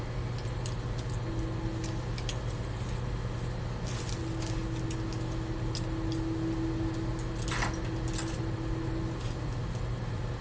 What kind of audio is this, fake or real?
real